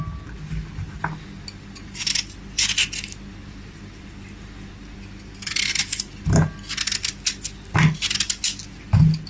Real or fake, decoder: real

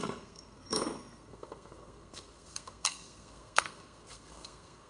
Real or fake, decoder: fake, codec, SNAC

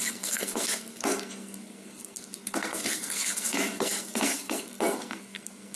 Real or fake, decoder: fake, codec, SNAC